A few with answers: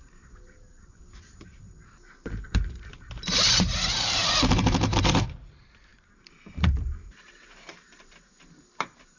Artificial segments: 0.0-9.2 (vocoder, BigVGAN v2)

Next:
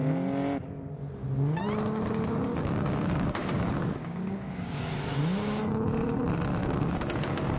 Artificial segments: 2.5-5.6 (codec, DAC); 6.6-7.6

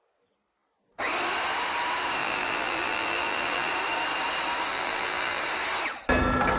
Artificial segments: 2.2-3.7 (vocoder, BigVGAN v2); 4.7-5.4

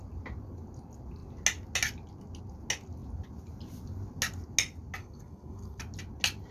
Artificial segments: 5.0-5.8 (codec, SNAC)

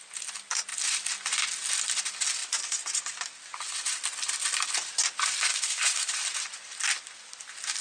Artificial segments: 5.5-6.1 (autoencoder, DAC-VAE)

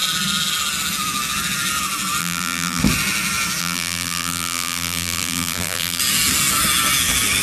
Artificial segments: 2.2-2.8 (vocoder, BigVGAN v2); 3.6-6.0

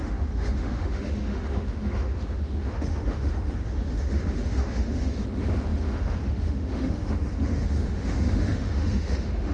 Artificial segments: 0.0-9.5 (autoencoder, DAC-VAE)